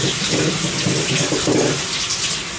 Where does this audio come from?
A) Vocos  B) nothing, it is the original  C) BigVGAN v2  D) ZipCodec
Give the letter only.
B